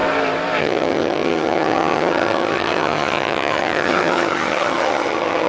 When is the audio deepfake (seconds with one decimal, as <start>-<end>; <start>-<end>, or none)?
0.6-5.5